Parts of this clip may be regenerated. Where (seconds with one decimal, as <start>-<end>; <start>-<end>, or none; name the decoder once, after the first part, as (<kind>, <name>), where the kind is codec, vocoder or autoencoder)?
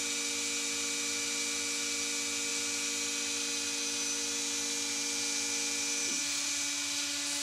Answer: none